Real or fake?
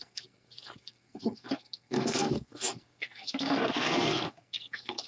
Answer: fake